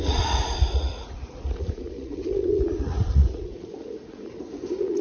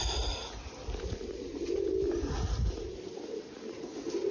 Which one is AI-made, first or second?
first